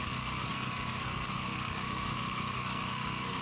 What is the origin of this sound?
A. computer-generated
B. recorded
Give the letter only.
A